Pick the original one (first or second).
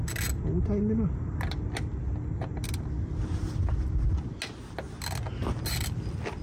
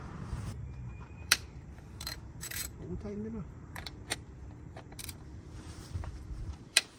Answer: first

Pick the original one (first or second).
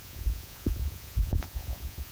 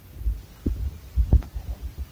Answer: second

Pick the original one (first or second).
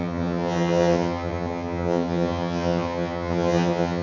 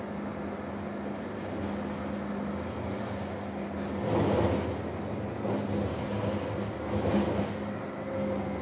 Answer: second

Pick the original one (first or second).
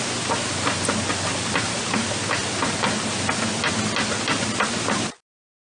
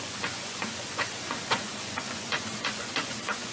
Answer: first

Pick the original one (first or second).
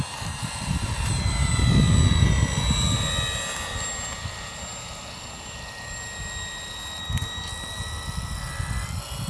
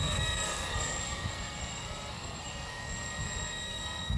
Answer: first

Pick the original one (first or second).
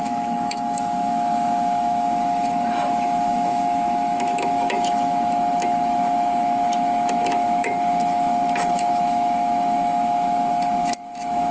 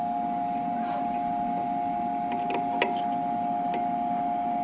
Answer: second